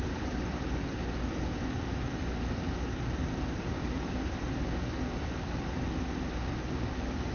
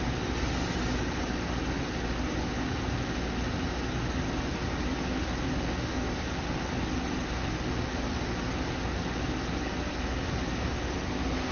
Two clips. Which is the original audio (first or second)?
second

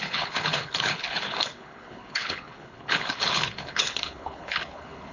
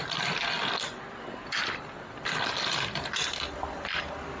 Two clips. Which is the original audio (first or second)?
second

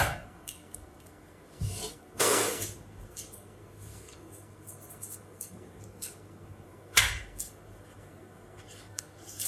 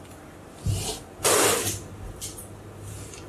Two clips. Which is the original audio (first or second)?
second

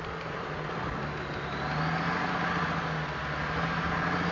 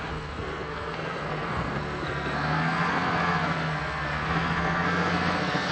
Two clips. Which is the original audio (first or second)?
first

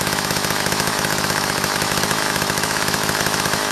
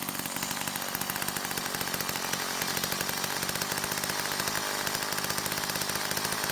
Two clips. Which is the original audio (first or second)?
second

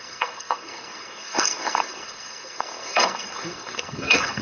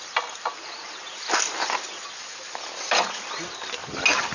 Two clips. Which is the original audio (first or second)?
second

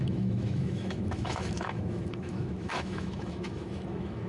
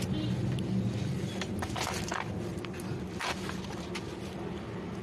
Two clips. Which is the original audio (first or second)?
second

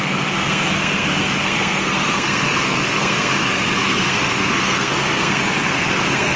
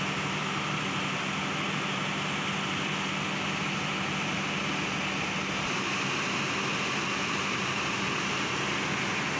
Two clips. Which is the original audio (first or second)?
second